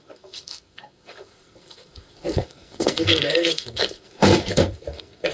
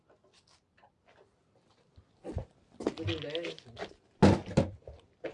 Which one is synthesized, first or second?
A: first